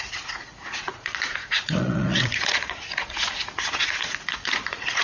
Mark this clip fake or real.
fake